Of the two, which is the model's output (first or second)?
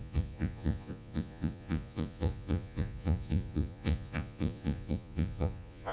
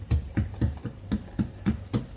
first